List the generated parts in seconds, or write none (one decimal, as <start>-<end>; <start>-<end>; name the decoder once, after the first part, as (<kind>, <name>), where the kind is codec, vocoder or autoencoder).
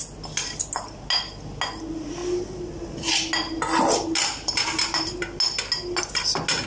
none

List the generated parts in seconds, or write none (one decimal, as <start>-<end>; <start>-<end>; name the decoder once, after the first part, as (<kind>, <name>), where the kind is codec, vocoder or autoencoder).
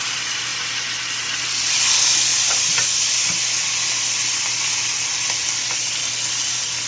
none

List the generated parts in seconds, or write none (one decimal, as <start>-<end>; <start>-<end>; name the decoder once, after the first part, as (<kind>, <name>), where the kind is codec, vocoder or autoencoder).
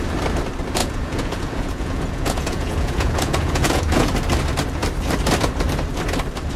0.8-4.1 (vocoder, Vocos)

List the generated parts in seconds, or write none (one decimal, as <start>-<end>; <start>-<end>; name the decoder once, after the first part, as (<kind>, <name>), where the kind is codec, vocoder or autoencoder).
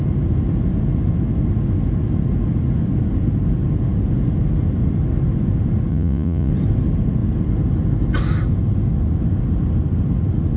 5.9-6.5 (vocoder, Vocos)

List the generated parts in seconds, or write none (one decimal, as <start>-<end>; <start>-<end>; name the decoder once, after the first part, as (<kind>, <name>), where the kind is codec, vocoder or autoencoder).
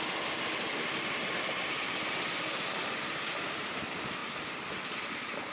none